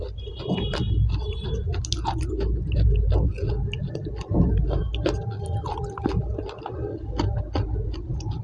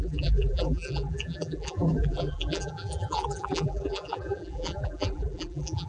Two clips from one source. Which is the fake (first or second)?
second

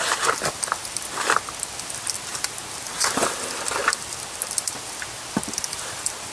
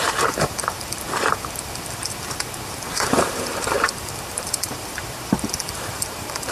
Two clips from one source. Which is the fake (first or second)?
second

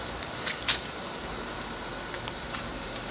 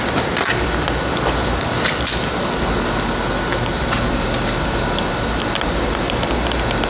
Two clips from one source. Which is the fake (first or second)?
first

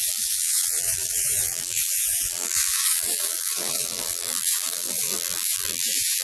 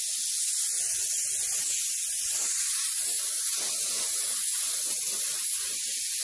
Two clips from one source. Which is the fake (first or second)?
first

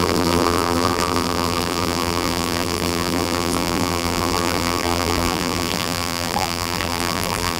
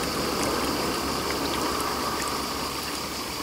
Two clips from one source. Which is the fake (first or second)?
first